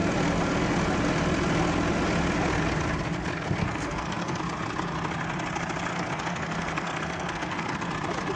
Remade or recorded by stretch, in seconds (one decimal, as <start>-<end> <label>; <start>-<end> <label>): 0.0-3.6 recorded; 3.6-4.4 remade; 4.4-5.9 recorded; 5.9-7.9 remade; 7.9-8.4 recorded